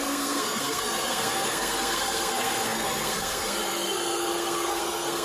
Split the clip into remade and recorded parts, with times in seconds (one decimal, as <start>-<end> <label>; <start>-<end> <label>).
0.0-5.2 remade